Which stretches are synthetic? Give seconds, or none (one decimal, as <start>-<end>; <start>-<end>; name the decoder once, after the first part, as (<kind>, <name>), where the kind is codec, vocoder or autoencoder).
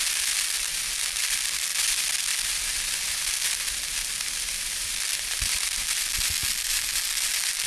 none